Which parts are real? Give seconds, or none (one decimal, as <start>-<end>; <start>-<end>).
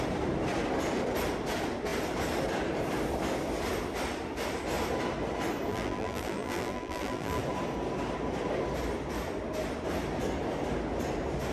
0.0-5.7; 7.4-11.5